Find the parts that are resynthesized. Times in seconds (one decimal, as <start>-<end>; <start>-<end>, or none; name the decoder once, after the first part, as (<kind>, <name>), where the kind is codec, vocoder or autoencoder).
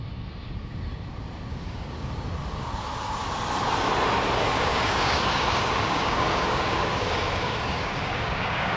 1.5-2.1 (codec, DAC); 4.5-8.8